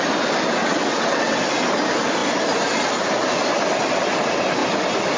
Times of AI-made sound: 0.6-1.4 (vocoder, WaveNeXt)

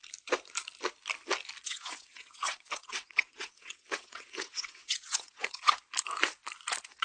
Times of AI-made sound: 1.6-5.8 (vocoder, WaveNeXt)

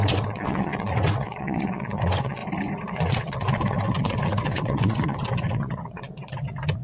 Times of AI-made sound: 0.0-2.4 (vocoder, WaveNeXt); 2.9-6.8

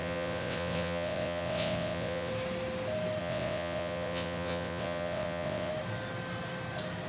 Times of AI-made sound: 0.0-2.3 (vocoder, WaveNeXt); 3.2-5.7

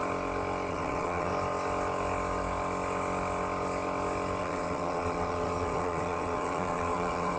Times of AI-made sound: 0.7-1.3 (vocoder, WaveNeXt); 4.4-7.4